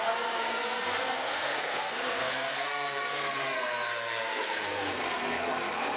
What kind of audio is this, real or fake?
fake